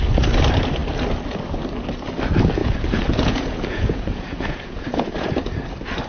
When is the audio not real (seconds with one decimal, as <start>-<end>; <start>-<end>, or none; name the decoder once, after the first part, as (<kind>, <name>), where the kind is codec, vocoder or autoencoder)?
2.6-5.3 (vocoder, Vocos)